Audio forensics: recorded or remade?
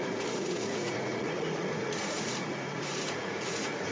remade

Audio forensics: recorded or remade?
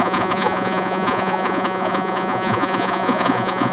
remade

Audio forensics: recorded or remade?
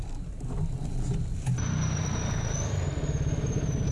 recorded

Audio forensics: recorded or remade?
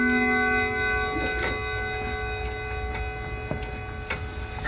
recorded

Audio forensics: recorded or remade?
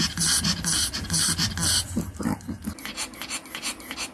recorded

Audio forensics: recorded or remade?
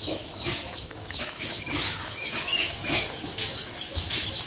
remade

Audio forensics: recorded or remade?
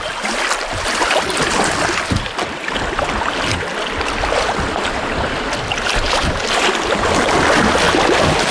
recorded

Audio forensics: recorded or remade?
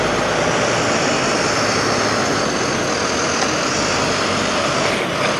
recorded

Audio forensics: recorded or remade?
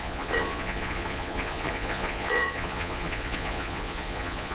remade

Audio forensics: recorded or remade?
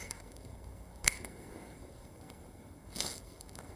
remade